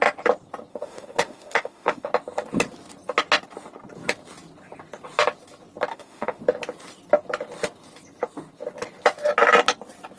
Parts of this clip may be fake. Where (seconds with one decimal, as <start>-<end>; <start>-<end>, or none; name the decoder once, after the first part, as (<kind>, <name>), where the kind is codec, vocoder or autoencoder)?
0.7-2.1 (autoencoder, DAC-VAE); 5.9-6.4